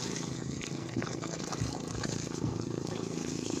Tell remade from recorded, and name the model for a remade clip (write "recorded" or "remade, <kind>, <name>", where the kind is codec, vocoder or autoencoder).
remade, codec, SNAC